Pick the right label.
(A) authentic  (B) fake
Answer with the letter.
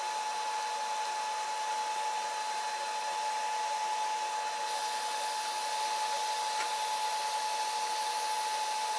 A